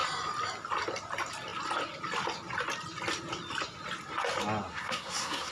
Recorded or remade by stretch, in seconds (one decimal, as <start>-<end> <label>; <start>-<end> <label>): 0.0-4.7 recorded; 4.7-5.5 remade